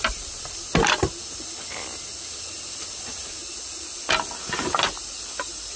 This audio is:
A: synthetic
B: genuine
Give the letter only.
B